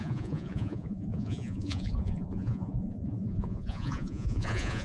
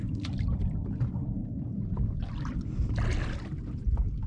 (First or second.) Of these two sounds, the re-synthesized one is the first